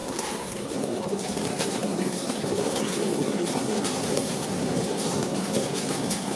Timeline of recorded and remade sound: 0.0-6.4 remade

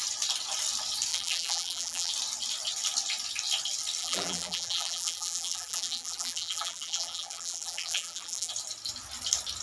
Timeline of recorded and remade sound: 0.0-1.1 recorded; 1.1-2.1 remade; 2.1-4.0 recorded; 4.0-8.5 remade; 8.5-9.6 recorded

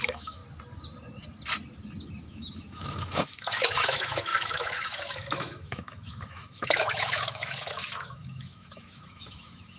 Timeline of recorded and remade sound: 0.0-0.4 remade; 0.4-2.2 recorded; 2.2-9.8 remade

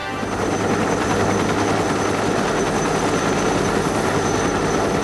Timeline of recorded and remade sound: 0.0-5.0 recorded

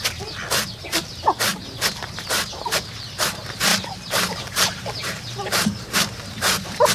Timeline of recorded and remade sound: 0.0-3.7 recorded; 3.7-6.9 remade

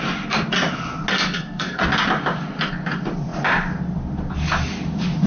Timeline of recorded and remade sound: 0.0-1.1 recorded; 1.1-1.8 remade; 1.8-5.3 recorded

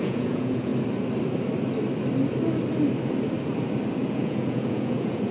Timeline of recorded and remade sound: 0.0-0.7 remade; 0.7-3.9 recorded; 3.9-5.3 remade

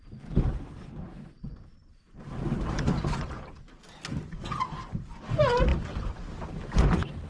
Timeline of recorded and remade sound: 0.0-7.3 remade